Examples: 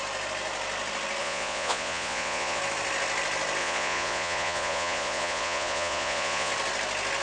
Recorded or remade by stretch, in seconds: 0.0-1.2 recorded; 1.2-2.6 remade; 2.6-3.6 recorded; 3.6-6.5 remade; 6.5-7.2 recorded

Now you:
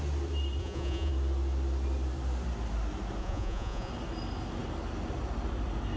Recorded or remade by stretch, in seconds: 0.0-0.6 recorded; 0.6-1.1 remade; 1.1-3.2 recorded; 3.2-3.9 remade; 3.9-6.0 recorded

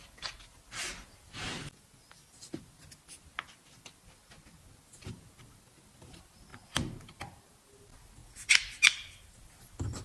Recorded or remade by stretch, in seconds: 0.0-10.0 recorded

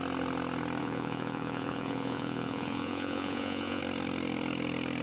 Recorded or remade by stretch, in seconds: 0.0-0.8 recorded; 0.8-3.8 remade; 3.8-5.0 recorded

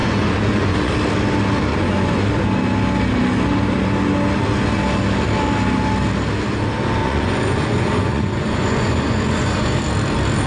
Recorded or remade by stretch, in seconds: 0.0-0.9 remade; 0.9-1.7 recorded; 1.7-2.3 remade; 2.3-7.0 recorded; 7.0-9.8 remade; 9.8-10.5 recorded

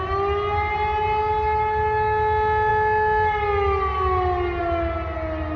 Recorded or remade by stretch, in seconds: 0.0-5.6 recorded

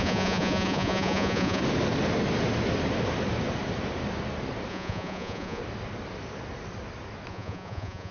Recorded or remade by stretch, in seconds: 0.0-1.6 remade; 1.6-4.7 recorded; 4.7-5.6 remade; 5.6-7.3 recorded; 7.3-8.1 remade